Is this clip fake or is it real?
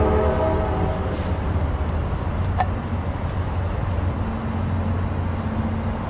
real